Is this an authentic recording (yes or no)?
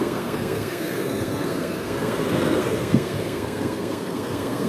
no